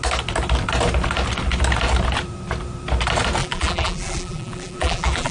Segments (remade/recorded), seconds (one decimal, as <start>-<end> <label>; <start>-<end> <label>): 0.0-3.4 recorded; 3.4-5.3 remade